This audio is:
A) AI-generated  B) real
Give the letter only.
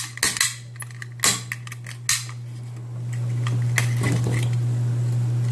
B